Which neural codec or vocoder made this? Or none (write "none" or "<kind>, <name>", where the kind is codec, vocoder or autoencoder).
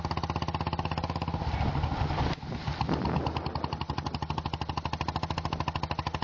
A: none